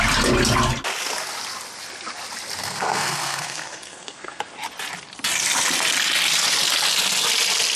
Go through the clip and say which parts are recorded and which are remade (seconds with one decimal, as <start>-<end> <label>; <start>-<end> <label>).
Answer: 0.0-2.6 recorded; 2.6-4.4 remade; 4.4-7.8 recorded